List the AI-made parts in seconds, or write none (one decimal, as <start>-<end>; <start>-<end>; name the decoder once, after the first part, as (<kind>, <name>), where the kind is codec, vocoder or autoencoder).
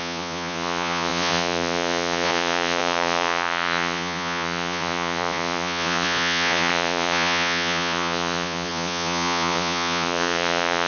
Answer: 0.0-10.9 (vocoder, Vocos)